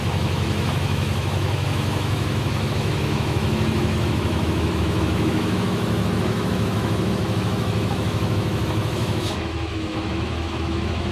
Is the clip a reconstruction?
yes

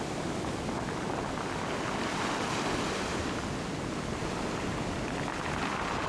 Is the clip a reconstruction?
no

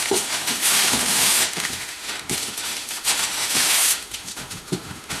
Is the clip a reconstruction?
yes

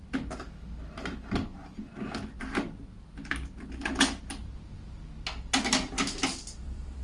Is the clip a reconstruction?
no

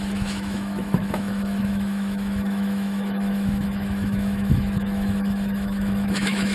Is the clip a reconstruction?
yes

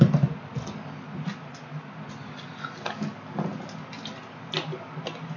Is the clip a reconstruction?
no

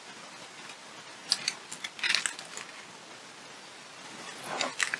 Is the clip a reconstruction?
no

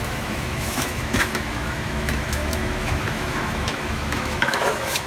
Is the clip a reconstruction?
yes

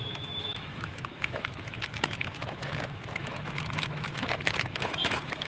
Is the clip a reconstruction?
yes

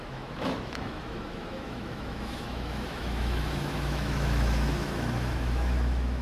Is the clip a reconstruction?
yes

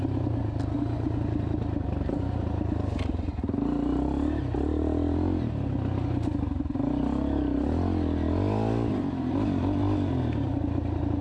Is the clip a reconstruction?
no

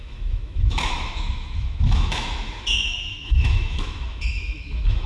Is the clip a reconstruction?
yes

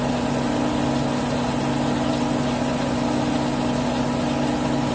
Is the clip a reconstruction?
no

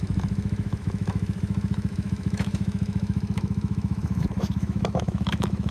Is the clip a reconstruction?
yes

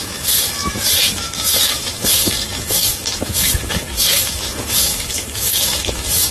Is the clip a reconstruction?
yes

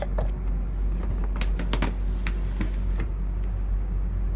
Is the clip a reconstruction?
no